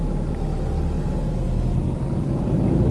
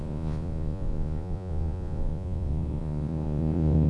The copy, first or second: second